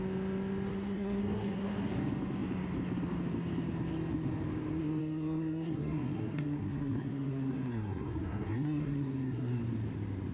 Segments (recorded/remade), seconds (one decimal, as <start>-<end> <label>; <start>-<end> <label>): 0.0-0.7 recorded; 0.7-1.9 remade; 1.9-5.0 recorded; 5.0-9.6 remade; 9.6-10.3 recorded